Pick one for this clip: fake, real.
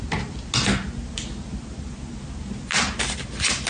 real